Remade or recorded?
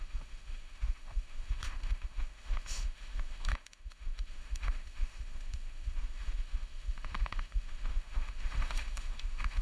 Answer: remade